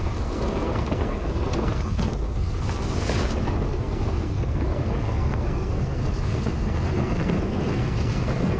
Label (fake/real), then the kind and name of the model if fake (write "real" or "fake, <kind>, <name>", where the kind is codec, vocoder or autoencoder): fake, codec, SNAC